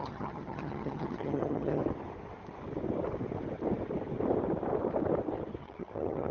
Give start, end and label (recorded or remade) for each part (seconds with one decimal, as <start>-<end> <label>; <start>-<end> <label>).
0.0-1.8 remade; 1.8-5.6 recorded; 5.6-6.3 remade